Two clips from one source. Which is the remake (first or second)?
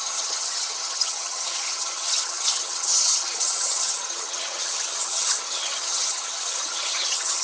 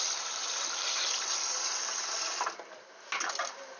first